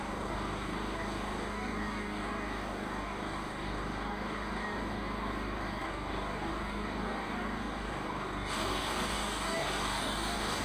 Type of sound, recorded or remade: remade